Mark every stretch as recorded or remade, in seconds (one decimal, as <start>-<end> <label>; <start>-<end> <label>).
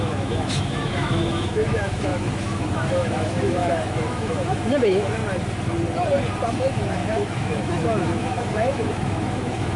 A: 0.0-5.2 remade; 5.2-6.6 recorded; 6.6-9.8 remade